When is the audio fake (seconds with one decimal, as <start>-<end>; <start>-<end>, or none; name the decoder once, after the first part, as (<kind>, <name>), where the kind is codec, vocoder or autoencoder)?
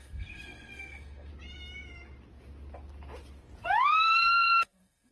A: 0.0-1.3 (codec, SNAC); 4.1-5.1